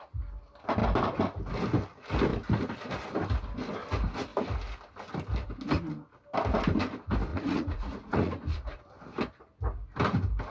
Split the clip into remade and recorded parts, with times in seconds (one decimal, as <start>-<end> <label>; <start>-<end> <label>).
0.0-7.3 recorded; 7.3-8.8 remade; 8.8-10.5 recorded